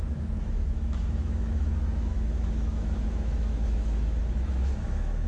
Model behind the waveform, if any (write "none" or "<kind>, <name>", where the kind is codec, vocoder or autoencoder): autoencoder, DAC-VAE